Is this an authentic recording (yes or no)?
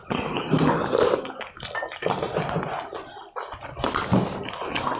yes